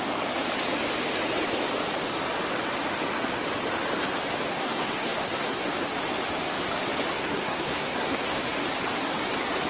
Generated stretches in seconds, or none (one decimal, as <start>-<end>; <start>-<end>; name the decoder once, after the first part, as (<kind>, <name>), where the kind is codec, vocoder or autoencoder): 4.5-5.6 (codec, SNAC); 7.1-8.4